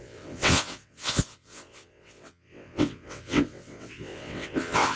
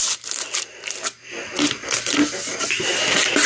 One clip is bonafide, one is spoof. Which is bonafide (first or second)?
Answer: second